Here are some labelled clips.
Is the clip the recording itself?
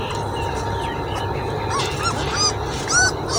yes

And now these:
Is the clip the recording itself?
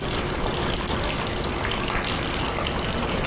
no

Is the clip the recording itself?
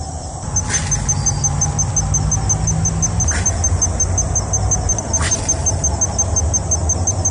yes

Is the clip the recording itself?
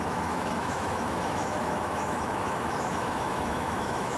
no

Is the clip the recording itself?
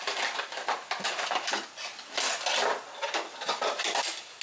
yes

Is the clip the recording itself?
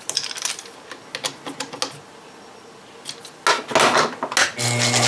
yes